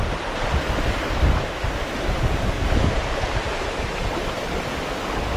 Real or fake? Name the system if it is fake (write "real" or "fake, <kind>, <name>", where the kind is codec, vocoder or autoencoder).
real